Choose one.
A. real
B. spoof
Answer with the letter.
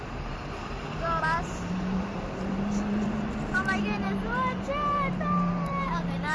B